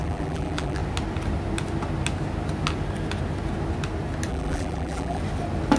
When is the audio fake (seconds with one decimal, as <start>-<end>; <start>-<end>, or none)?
0.0-0.8; 4.3-5.2

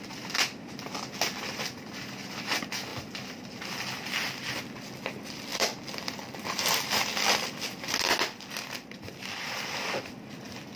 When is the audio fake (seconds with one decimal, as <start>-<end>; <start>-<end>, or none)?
2.9-3.6; 5.5-7.8